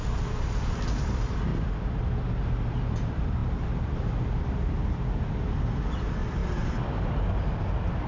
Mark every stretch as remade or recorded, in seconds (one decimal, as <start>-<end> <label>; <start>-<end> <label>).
0.0-1.5 remade; 1.5-3.0 recorded; 3.0-6.4 remade; 6.4-8.1 recorded